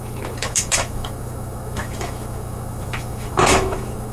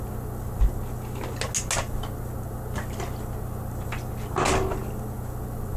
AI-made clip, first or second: first